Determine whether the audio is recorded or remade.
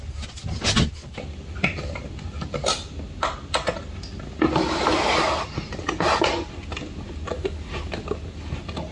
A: recorded